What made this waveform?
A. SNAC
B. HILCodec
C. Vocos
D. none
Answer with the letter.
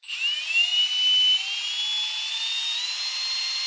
D